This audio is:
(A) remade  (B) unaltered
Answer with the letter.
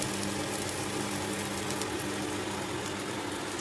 B